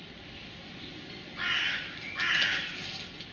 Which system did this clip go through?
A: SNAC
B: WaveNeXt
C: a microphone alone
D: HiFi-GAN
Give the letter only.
C